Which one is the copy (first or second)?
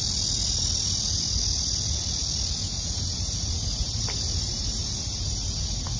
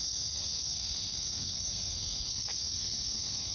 second